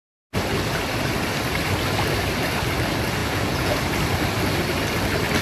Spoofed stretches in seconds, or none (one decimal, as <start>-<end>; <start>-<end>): 3.2-3.8